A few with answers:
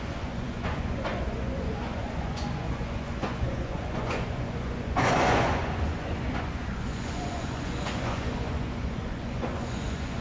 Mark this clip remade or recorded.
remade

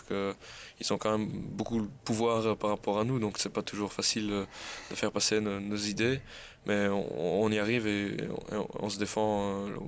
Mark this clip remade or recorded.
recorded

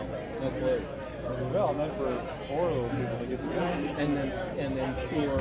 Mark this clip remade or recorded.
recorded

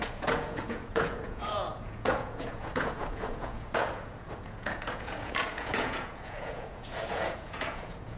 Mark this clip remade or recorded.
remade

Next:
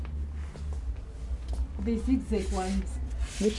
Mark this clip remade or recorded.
recorded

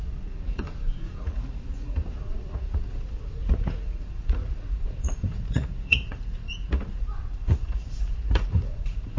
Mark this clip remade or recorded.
remade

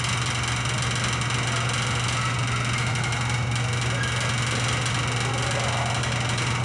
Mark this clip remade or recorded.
recorded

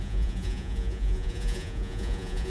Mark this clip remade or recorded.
remade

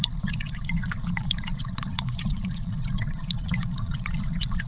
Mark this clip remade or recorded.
remade